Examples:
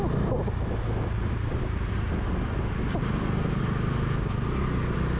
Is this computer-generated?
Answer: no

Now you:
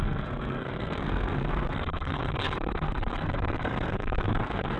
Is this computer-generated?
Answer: yes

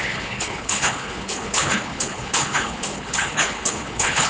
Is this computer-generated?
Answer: yes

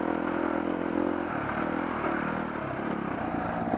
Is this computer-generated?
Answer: no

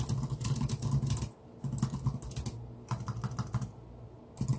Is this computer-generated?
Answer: no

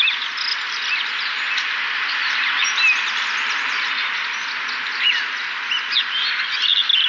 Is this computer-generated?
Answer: no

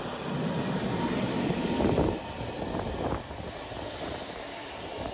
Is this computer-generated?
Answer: no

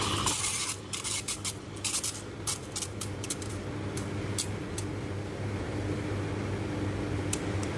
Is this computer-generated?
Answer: no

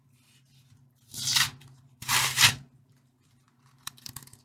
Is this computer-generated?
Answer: yes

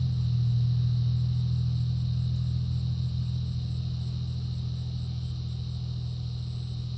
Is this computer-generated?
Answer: no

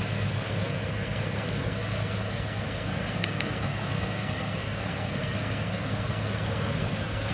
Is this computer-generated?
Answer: yes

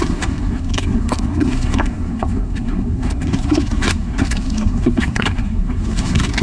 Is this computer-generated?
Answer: yes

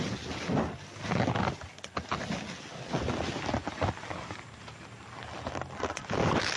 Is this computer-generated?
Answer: no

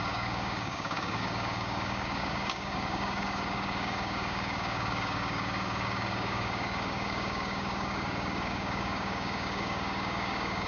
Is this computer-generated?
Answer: yes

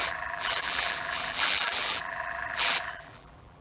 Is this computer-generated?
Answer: yes